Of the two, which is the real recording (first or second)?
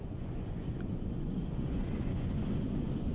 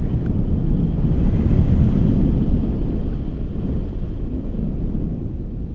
second